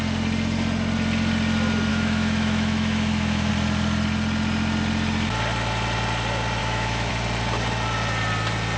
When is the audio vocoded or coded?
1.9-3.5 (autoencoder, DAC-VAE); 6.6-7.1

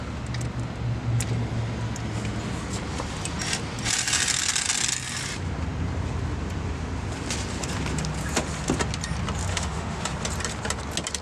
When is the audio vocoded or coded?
9.5-10.0 (autoencoder, DAC-VAE)